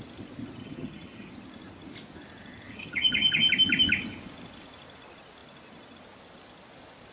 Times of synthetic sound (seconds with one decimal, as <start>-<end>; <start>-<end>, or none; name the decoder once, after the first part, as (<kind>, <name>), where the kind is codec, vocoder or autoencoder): 0.6-1.3 (vocoder, HiFi-GAN); 2.7-3.5